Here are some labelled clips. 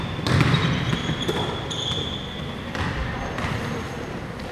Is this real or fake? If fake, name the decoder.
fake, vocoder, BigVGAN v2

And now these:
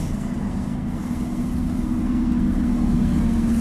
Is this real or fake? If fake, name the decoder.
fake, codec, SNAC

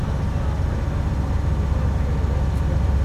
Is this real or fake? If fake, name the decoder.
real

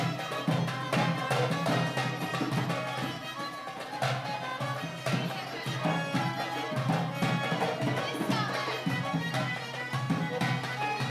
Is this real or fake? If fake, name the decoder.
real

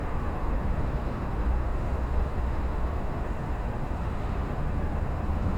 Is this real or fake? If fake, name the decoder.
fake, autoencoder, DAC-VAE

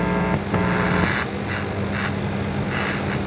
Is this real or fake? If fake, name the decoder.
real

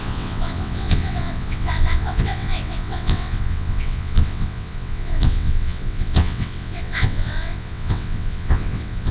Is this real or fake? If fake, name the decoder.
fake, vocoder, WaveNeXt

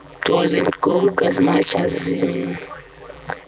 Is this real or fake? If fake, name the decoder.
fake, vocoder, BigVGAN v2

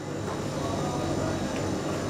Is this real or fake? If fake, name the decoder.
real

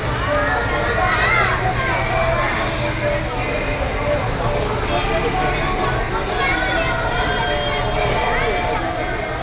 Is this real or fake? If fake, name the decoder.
real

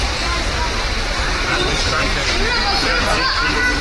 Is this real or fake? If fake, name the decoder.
real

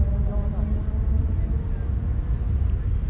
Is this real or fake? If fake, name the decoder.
real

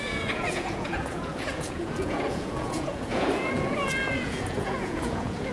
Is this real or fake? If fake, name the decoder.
fake, vocoder, Vocos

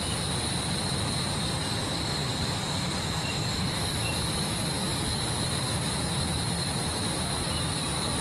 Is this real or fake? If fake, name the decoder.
fake, vocoder, BigVGAN v2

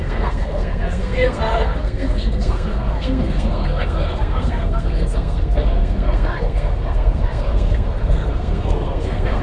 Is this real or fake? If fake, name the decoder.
fake, codec, SNAC